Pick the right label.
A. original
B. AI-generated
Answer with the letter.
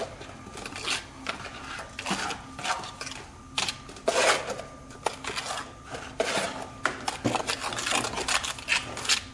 A